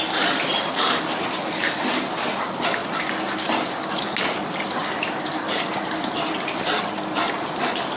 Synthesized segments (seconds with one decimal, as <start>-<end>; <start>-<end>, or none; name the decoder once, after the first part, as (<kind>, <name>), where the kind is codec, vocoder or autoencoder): none